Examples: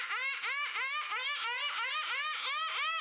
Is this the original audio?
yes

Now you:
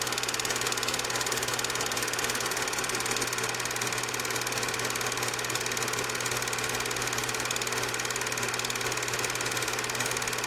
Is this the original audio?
yes